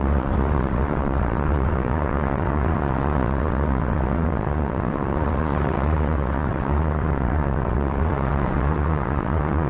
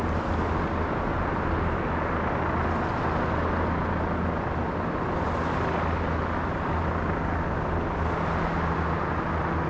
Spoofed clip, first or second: first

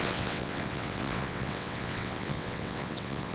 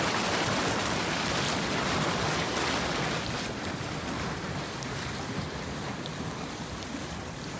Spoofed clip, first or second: first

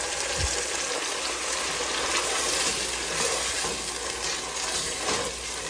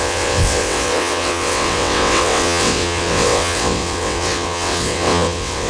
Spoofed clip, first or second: second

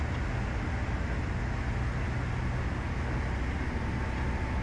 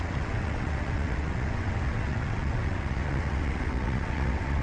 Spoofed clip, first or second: second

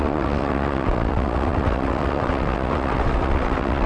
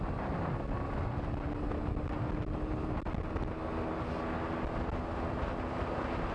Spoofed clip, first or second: first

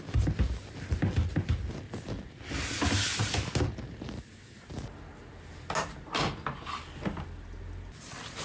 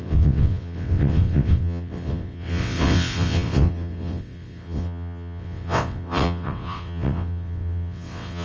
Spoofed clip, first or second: second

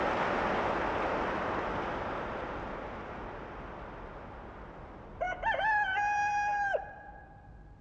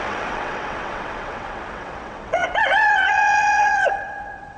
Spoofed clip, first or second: second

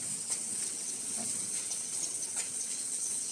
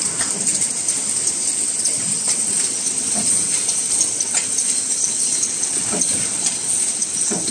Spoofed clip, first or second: first